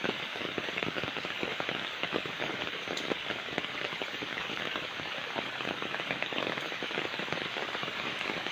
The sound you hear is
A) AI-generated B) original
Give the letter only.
A